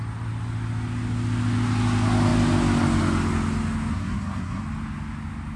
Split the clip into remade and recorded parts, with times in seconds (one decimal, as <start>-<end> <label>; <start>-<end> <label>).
0.0-3.9 recorded; 3.9-4.6 remade; 4.6-5.6 recorded